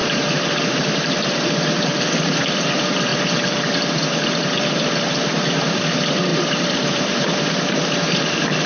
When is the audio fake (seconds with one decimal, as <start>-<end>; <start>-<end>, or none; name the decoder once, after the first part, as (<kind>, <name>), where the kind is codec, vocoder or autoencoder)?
0.0-3.1 (vocoder, BigVGAN v2); 4.0-8.7